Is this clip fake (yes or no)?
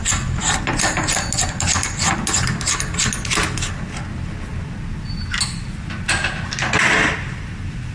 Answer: no